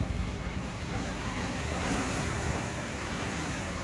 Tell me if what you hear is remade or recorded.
remade